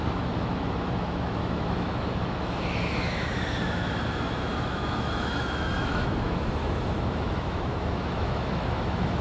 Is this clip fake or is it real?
fake